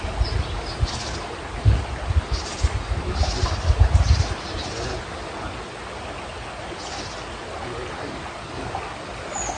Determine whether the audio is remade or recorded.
recorded